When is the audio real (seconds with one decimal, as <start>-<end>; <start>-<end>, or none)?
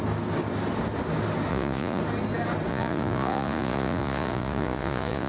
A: 0.0-1.5; 2.0-2.7